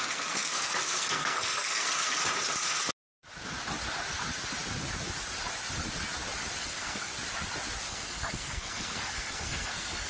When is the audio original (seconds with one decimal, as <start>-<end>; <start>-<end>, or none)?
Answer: 2.2-6.6; 7.1-7.9